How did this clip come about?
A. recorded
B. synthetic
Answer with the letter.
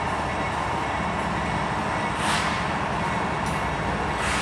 A